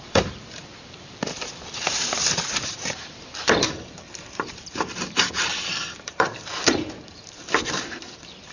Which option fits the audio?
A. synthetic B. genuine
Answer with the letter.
A